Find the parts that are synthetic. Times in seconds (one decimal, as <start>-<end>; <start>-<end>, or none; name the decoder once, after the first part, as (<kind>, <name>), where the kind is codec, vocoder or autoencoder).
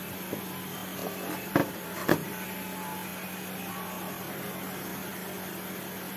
1.6-2.3 (vocoder, BigVGAN v2)